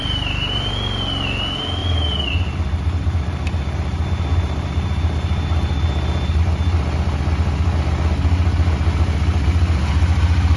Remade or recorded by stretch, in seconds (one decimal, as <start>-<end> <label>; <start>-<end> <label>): 0.0-0.7 remade; 0.7-1.8 recorded; 1.8-6.4 remade; 6.4-10.6 recorded